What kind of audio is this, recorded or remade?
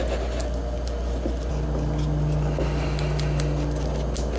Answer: recorded